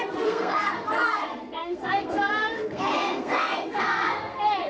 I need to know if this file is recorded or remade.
remade